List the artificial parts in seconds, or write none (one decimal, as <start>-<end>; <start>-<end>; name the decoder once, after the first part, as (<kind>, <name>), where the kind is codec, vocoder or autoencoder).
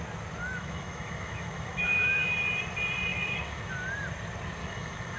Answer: 0.4-2.3 (autoencoder, DAC-VAE); 3.1-3.7; 4.6-5.2